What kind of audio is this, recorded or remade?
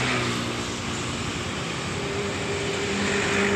recorded